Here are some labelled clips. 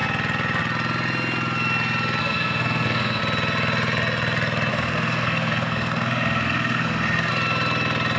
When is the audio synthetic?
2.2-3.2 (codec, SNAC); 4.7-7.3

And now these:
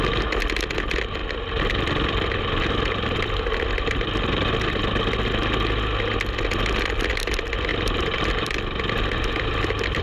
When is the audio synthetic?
1.2-5.1 (vocoder, BigVGAN v2); 7.7-10.0

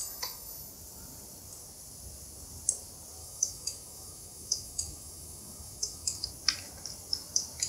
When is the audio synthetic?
0.0-0.5 (autoencoder, DAC-VAE); 3.2-6.3

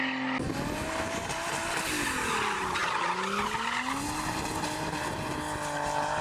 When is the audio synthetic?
none